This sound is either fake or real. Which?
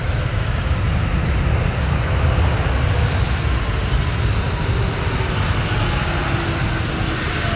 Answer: real